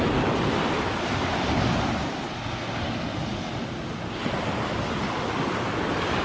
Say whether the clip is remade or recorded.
recorded